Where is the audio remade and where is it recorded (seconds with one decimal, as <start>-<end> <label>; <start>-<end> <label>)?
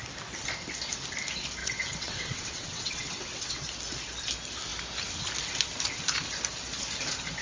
0.0-1.6 recorded; 1.6-3.5 remade; 3.5-7.4 recorded